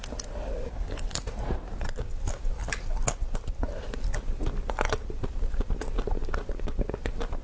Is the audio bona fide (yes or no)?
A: yes